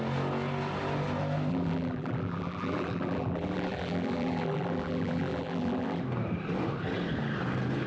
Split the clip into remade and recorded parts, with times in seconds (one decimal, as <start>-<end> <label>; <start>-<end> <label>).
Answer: 0.0-1.5 recorded; 1.5-6.0 remade; 6.0-7.9 recorded